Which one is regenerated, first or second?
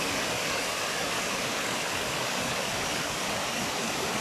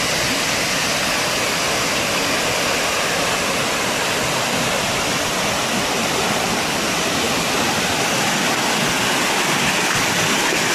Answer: first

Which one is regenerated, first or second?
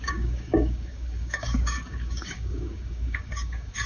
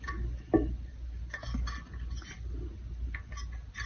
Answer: first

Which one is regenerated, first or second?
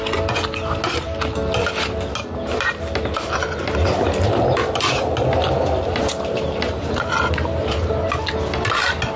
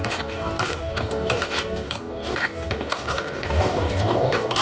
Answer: second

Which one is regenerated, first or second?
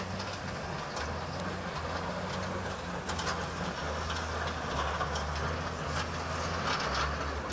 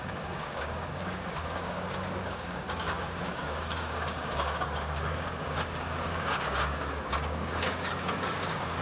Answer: second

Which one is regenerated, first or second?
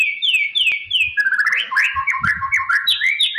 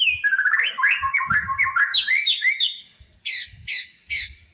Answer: second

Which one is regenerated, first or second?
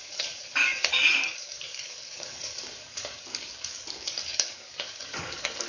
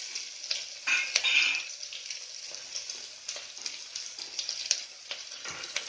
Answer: first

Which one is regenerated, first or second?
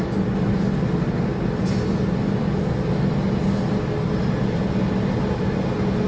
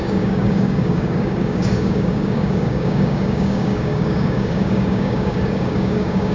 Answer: second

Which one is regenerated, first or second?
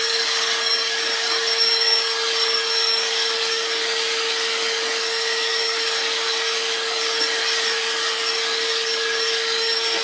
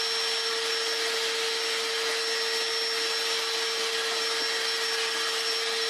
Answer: first